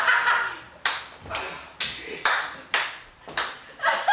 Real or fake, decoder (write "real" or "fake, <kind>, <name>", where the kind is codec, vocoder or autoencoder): real